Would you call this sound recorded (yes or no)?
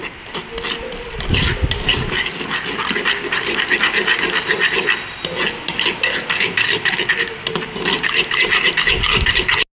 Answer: yes